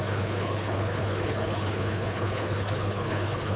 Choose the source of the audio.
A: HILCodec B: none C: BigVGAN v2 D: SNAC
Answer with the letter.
A